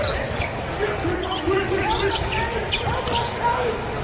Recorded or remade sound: recorded